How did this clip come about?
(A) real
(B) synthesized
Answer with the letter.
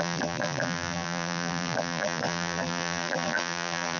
B